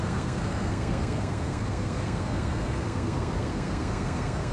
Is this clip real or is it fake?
fake